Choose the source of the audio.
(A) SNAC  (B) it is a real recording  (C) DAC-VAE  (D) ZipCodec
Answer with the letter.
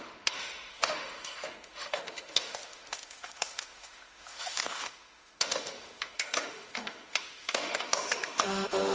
C